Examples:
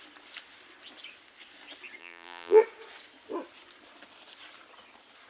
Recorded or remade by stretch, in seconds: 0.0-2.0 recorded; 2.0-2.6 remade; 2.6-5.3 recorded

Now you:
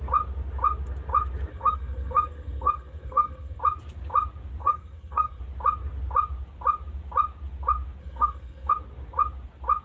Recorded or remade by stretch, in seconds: 0.0-1.5 recorded; 1.5-3.6 remade; 3.6-4.6 recorded; 4.6-5.4 remade; 5.4-8.0 recorded; 8.0-8.7 remade; 8.7-9.8 recorded

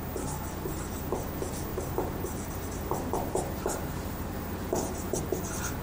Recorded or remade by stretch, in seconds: 0.0-1.7 recorded; 1.7-5.2 remade; 5.2-5.8 recorded

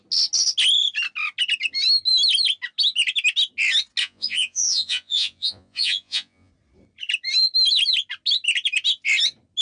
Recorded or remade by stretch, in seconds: 0.0-4.0 recorded; 4.0-6.5 remade; 6.5-9.6 recorded

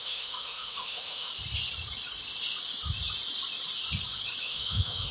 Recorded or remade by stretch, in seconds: 0.0-1.3 remade; 1.3-4.4 recorded; 4.4-5.1 remade

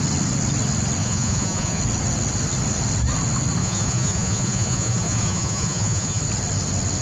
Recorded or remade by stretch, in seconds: 0.0-1.0 recorded; 1.0-1.8 remade; 1.8-3.6 recorded; 3.6-6.2 remade; 6.2-7.0 recorded